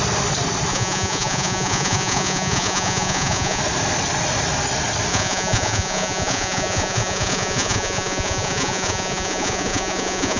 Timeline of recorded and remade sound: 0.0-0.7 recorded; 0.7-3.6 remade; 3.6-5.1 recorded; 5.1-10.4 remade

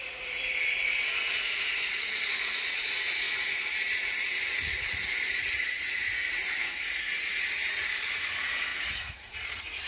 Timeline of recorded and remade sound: 0.0-9.9 remade

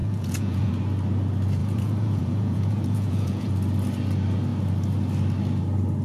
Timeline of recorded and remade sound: 0.0-0.7 remade; 0.7-1.6 recorded; 1.6-3.5 remade; 3.5-6.0 recorded

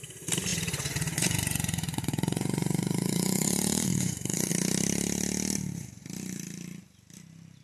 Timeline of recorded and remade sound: 0.0-0.5 recorded; 0.5-4.5 remade; 4.5-7.6 recorded

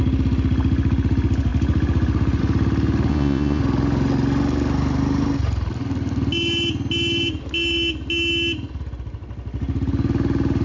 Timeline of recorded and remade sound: 0.0-3.1 recorded; 3.1-3.6 remade; 3.6-10.6 recorded

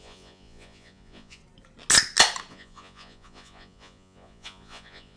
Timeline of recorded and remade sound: 0.0-1.4 remade; 1.4-2.5 recorded; 2.5-5.2 remade

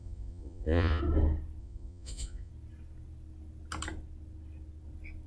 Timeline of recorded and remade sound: 0.0-1.0 remade; 1.0-1.6 recorded; 1.6-2.5 remade; 2.5-5.3 recorded

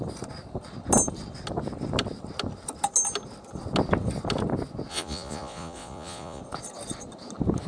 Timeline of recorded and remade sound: 0.0-4.9 recorded; 4.9-6.4 remade; 6.4-7.7 recorded